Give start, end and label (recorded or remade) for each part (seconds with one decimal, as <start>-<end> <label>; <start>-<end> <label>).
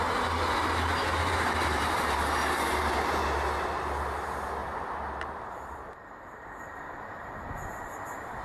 0.0-1.2 recorded; 1.2-3.2 remade; 3.2-4.6 recorded; 4.6-7.5 remade; 7.5-8.4 recorded